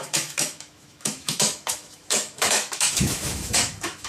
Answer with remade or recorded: remade